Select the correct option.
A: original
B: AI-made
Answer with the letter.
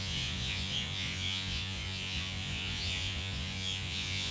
B